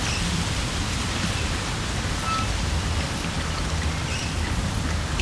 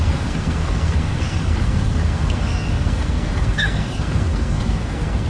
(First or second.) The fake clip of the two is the second